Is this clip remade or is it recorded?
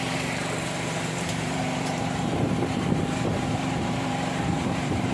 remade